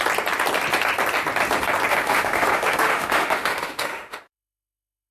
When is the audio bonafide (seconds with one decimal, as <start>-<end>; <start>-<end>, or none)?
0.0-1.9